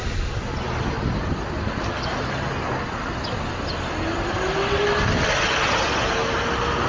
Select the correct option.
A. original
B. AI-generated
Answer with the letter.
A